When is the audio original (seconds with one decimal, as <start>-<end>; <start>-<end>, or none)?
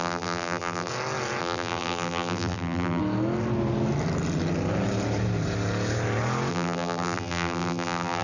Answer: 0.9-1.4; 3.0-6.5